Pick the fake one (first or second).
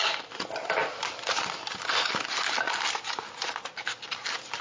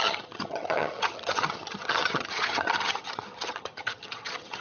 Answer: second